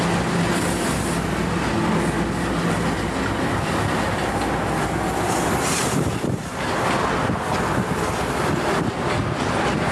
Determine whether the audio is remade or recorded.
recorded